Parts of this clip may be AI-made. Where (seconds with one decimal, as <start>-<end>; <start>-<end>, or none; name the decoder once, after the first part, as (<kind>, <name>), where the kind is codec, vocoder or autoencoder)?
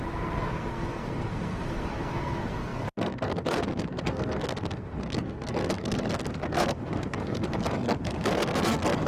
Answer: 0.0-9.1 (codec, SNAC)